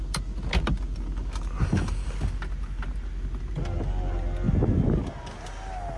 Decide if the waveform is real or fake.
real